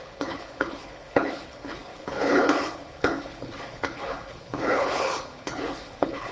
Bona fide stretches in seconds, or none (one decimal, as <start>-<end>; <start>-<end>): none